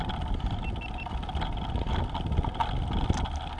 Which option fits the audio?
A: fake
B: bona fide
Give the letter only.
B